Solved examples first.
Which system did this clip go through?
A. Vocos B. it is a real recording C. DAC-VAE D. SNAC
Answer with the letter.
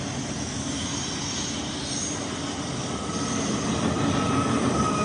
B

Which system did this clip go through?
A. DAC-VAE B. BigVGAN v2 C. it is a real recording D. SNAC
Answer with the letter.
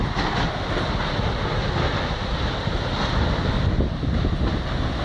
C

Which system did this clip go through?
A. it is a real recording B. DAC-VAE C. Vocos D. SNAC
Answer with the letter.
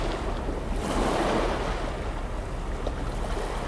A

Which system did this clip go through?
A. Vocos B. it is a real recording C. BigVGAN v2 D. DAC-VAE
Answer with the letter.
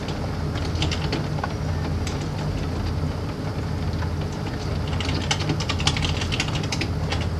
B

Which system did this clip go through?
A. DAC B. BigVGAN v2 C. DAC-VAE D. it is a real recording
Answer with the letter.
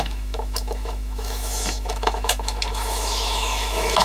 C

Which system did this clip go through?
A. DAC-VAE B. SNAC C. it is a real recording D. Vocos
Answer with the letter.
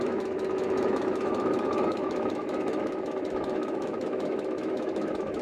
A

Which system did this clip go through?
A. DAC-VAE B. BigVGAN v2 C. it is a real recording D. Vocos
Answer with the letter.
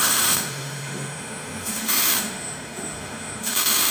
A